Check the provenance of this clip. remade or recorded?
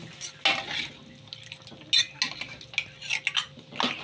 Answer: recorded